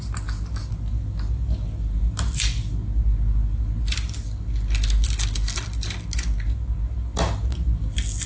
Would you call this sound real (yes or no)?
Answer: yes